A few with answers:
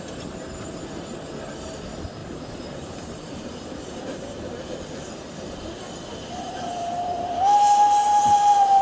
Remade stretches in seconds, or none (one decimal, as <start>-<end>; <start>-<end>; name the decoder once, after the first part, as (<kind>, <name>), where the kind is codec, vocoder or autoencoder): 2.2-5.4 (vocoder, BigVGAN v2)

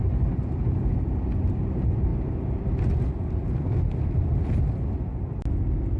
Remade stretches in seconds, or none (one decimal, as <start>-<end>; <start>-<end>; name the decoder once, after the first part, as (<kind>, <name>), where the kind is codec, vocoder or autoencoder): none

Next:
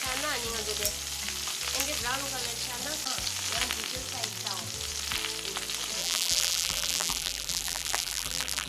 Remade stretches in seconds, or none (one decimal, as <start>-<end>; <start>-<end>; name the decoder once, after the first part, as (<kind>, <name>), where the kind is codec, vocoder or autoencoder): 6.0-8.7 (vocoder, BigVGAN v2)

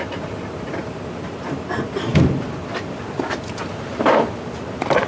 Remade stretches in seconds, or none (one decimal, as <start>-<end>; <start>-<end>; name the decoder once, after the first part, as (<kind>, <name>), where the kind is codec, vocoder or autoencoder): 0.0-2.1 (vocoder, BigVGAN v2); 4.6-5.1